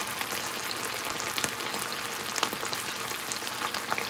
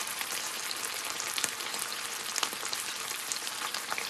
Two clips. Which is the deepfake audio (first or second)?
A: second